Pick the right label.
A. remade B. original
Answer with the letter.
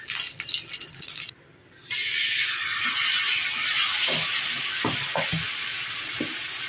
B